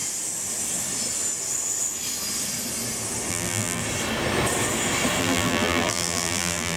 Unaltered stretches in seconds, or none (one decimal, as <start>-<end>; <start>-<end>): 0.0-3.3; 3.8-5.2